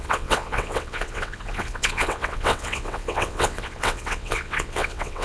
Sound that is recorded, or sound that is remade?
remade